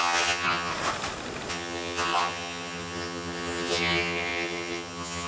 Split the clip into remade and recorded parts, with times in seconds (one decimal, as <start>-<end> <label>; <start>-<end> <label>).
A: 0.0-0.7 remade; 0.7-1.5 recorded; 1.5-5.3 remade